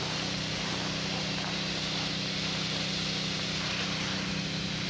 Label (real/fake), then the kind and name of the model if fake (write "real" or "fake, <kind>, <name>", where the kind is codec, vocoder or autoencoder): real